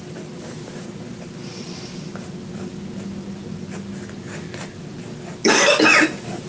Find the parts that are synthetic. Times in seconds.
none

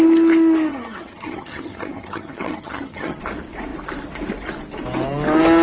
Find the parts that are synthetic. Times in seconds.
0.7-3.2 (vocoder, HiFi-GAN)

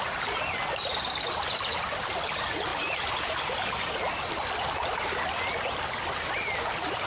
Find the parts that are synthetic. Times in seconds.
none

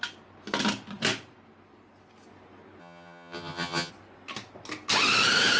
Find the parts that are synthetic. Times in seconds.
2.8-3.9 (vocoder, HiFi-GAN)

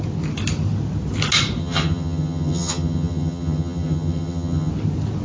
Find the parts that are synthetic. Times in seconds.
1.6-4.7 (vocoder, HiFi-GAN)